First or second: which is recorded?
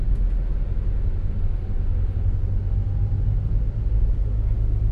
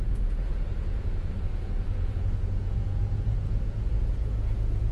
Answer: first